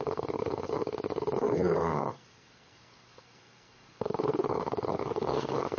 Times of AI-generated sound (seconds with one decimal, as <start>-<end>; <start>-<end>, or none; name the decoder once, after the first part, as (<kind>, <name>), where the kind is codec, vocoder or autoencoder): 0.0-5.8 (codec, SNAC)